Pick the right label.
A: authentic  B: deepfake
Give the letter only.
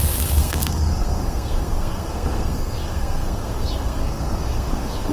B